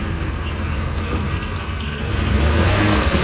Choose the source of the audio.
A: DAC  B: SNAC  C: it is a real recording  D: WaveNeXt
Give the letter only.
B